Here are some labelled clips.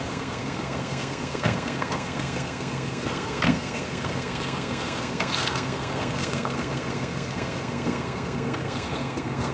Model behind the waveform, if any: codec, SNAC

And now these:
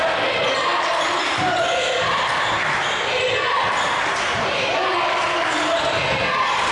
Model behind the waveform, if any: none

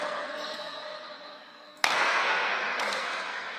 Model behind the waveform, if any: codec, SNAC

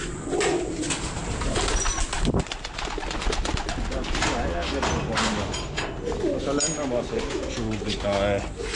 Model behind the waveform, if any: none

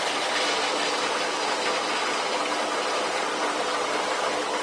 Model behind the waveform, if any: vocoder, BigVGAN v2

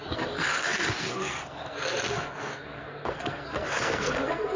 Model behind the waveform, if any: codec, SNAC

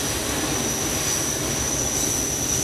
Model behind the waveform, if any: none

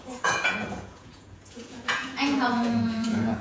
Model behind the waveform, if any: vocoder, Vocos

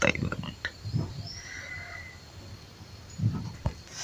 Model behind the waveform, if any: none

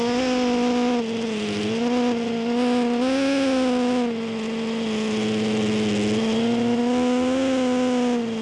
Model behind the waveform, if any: none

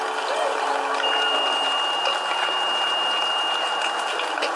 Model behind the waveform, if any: none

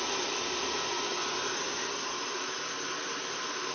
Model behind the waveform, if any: none